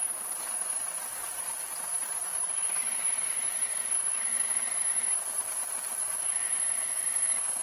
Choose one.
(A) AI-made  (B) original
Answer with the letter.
B